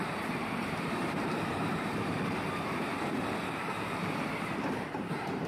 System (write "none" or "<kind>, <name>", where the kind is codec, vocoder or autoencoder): vocoder, BigVGAN v2